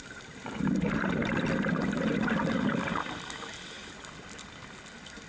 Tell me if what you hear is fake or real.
real